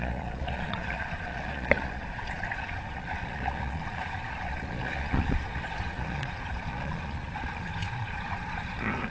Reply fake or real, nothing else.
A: fake